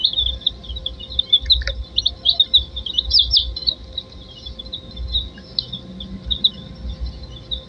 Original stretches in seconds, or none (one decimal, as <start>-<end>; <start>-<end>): 0.0-3.6; 4.6-7.7